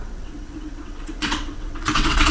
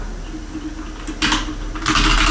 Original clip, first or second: second